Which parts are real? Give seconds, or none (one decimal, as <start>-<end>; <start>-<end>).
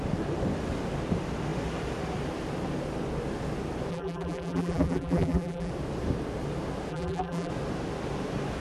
0.0-3.9; 5.7-6.9; 7.5-8.6